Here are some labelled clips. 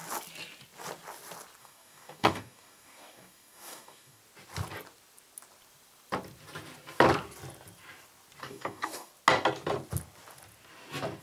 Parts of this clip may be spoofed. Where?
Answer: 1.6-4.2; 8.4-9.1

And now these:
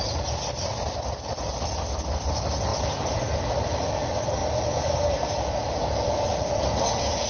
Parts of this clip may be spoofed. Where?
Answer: none